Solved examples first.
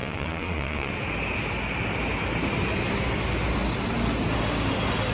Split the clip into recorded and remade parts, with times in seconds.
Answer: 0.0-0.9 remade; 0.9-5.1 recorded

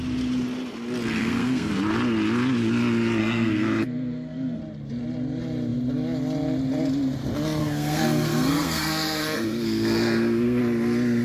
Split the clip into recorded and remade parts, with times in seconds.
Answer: 0.0-1.2 recorded; 1.2-1.7 remade; 1.7-3.2 recorded; 3.2-4.6 remade; 4.6-7.6 recorded; 7.6-10.6 remade; 10.6-11.2 recorded

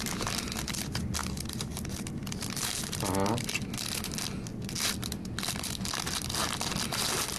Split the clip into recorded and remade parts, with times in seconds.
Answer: 0.0-7.4 recorded

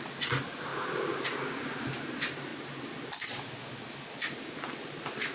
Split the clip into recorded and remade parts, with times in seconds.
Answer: 0.0-5.3 recorded

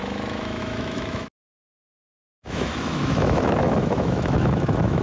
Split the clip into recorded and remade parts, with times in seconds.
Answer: 0.0-5.0 remade

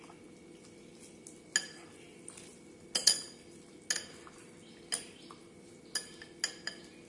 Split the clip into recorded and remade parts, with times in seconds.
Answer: 0.0-7.1 recorded

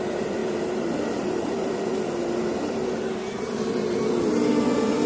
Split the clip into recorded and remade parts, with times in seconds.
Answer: 0.0-1.9 remade; 1.9-5.1 recorded